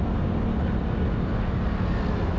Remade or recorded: recorded